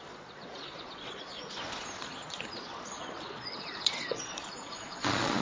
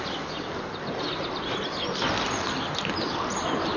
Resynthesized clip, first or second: first